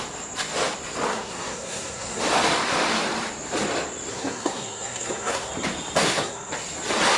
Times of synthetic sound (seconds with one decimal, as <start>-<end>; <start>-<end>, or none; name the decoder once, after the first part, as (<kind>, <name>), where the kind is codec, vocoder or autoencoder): 1.1-2.2 (codec, SNAC); 4.1-5.5; 6.0-6.5